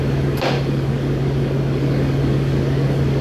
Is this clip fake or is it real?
fake